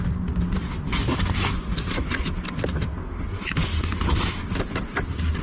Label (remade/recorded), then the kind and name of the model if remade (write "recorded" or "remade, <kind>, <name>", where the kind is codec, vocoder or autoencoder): recorded